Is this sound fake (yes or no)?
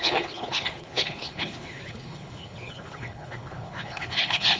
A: yes